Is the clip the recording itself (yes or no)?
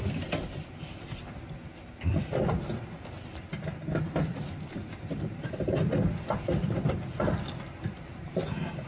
yes